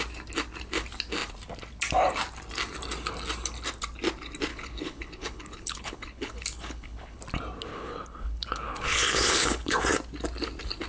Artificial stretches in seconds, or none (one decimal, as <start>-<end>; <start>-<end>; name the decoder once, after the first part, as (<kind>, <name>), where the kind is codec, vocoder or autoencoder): 4.5-7.2 (codec, HILCodec); 7.7-9.8